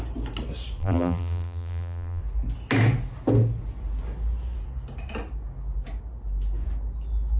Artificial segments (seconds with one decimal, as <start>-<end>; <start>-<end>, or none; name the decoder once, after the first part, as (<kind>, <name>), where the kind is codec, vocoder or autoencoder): 0.8-2.2 (vocoder, BigVGAN v2)